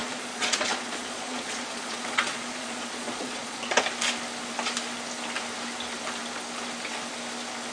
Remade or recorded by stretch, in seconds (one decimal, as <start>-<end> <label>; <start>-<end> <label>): 0.0-3.8 remade; 3.8-7.7 recorded